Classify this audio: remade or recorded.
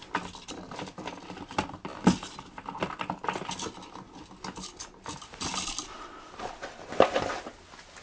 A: recorded